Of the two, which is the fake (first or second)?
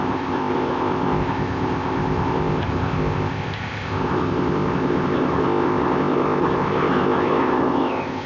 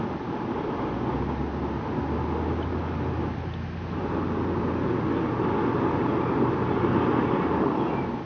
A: first